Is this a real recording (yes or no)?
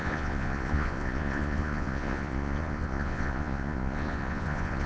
no